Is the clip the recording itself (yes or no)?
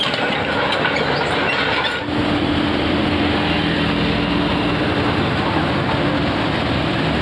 yes